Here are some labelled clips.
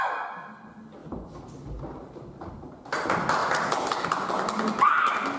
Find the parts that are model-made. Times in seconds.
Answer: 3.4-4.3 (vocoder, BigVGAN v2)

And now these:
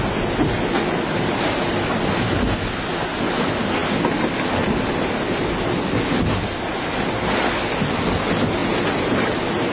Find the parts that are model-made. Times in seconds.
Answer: none

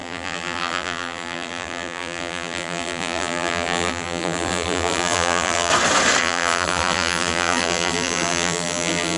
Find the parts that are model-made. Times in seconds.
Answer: 0.0-5.7 (vocoder, BigVGAN v2); 6.2-9.2

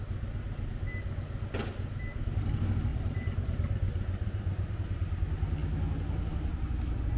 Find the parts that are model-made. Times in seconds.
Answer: 2.9-4.7 (vocoder, BigVGAN v2)

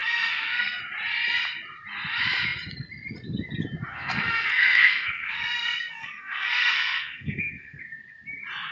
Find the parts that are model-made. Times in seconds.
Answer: 0.0-0.8 (codec, SNAC); 3.9-7.8

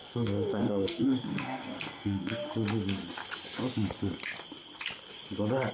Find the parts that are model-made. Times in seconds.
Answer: 0.0-2.4 (codec, SNAC)

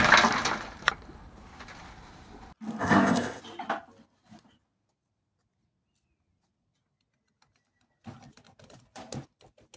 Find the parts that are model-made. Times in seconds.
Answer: 2.8-3.4 (codec, ZipCodec)

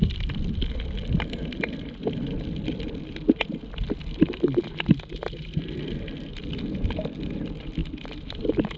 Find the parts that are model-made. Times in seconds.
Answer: none